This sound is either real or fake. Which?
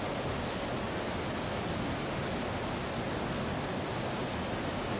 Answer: real